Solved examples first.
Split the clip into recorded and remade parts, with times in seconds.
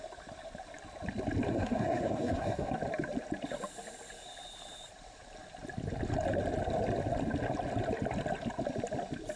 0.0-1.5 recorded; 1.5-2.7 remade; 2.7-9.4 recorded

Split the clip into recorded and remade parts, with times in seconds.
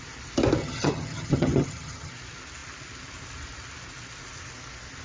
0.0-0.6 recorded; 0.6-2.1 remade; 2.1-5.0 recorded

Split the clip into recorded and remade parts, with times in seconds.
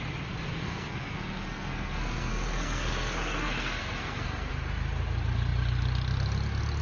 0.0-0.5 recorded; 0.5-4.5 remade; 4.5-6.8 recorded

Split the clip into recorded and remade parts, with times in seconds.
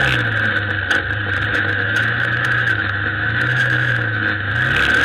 0.0-1.5 recorded; 1.5-4.5 remade; 4.5-5.0 recorded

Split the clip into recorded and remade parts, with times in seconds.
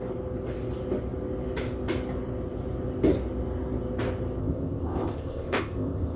0.0-4.4 recorded; 4.4-6.2 remade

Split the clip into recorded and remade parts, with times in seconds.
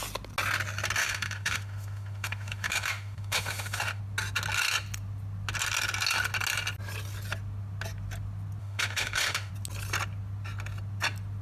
0.0-1.0 recorded; 1.0-4.0 remade; 4.0-8.6 recorded; 8.6-9.5 remade; 9.5-11.4 recorded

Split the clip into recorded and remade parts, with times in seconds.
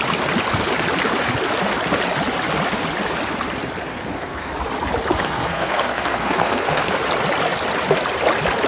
0.0-3.9 recorded; 3.9-4.5 remade; 4.5-5.1 recorded; 5.1-6.9 remade; 6.9-8.7 recorded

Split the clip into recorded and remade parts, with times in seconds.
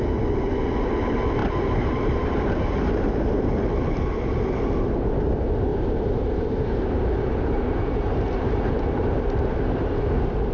0.0-1.4 recorded; 1.4-3.6 remade; 3.6-5.7 recorded; 5.7-9.9 remade; 9.9-10.5 recorded